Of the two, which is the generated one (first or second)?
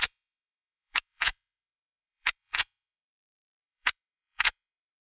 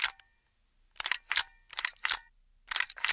first